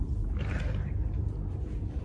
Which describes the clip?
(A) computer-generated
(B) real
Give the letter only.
A